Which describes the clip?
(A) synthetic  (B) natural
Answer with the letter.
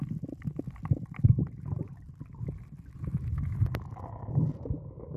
B